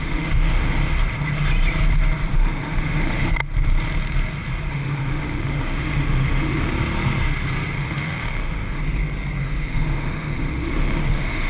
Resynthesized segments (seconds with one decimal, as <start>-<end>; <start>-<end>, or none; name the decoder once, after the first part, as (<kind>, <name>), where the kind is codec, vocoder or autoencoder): 0.0-0.8 (autoencoder, DAC-VAE); 2.3-3.4; 4.7-6.7; 7.8-8.8; 9.4-11.5